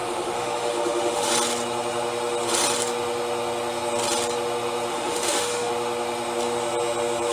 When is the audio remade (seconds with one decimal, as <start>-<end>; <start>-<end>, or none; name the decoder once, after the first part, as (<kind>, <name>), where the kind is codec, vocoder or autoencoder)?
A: 0.0-1.3 (autoencoder, DAC-VAE); 4.9-5.7